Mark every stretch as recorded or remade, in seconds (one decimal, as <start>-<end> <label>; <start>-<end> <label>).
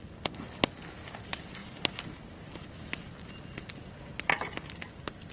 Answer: 0.0-5.3 recorded